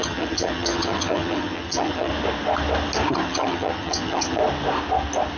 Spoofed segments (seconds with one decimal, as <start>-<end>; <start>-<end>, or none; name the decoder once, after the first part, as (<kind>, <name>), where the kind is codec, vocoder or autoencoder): 0.0-2.1 (vocoder, HiFi-GAN); 3.1-4.4